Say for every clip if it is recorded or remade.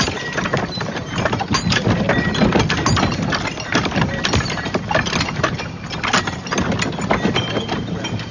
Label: recorded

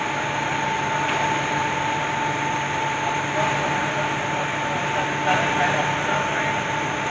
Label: recorded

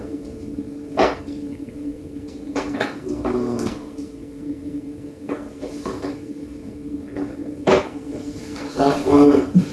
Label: remade